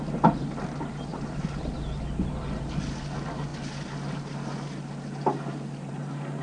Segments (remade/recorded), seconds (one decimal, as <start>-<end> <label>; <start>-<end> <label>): 0.0-6.4 recorded